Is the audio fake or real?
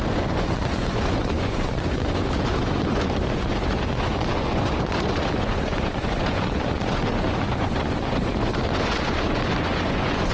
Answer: fake